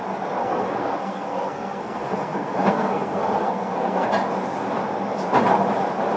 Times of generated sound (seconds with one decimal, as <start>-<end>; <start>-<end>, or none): 0.4-4.1